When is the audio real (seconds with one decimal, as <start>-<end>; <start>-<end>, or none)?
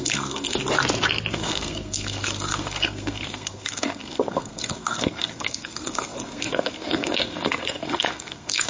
0.6-1.3